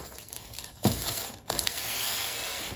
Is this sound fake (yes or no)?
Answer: yes